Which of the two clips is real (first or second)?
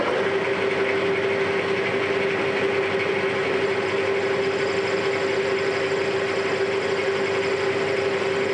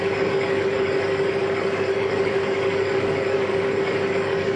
first